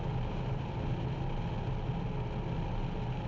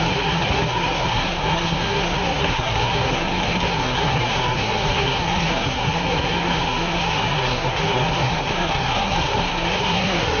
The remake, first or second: second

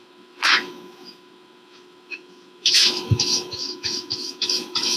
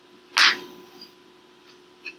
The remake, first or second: first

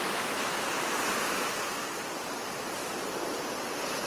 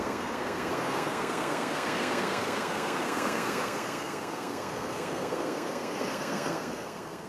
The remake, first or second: second